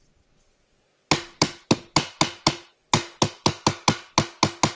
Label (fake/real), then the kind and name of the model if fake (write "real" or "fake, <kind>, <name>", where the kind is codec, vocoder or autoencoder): real